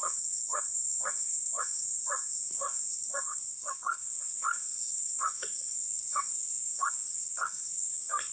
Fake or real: fake